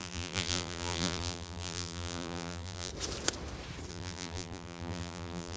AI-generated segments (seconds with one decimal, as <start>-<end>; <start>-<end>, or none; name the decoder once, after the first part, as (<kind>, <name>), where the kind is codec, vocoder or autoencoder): 0.0-2.9 (vocoder, BigVGAN v2); 3.9-5.6